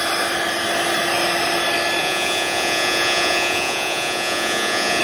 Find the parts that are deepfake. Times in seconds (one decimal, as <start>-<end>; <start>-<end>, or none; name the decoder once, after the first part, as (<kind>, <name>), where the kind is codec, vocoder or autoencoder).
2.0-5.0 (vocoder, Vocos)